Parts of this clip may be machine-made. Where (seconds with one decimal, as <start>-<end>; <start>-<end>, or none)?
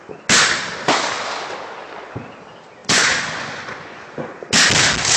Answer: 2.8-4.3